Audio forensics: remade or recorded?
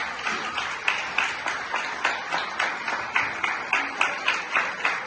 recorded